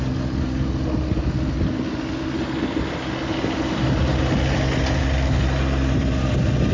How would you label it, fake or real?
real